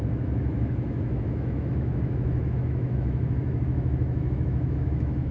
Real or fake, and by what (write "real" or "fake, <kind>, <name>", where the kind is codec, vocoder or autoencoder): fake, autoencoder, DAC-VAE